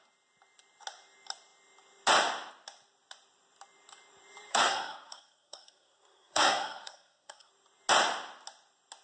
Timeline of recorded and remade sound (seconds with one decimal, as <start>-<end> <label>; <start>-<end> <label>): 0.0-4.5 recorded; 4.5-7.5 remade; 7.5-9.0 recorded